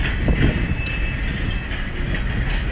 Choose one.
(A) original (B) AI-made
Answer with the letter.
A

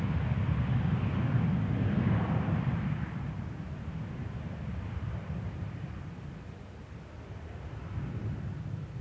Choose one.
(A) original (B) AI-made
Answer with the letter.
A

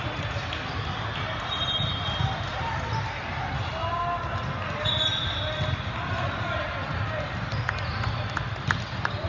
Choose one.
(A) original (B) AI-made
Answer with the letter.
A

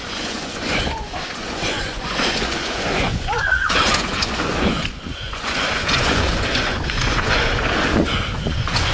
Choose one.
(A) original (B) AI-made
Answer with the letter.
B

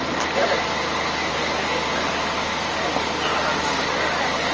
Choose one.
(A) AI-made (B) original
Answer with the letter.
B